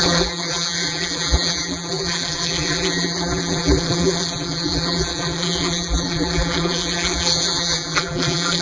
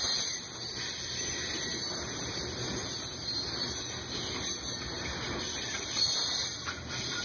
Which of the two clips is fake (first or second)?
first